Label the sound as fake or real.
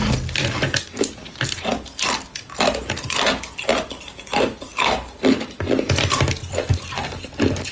real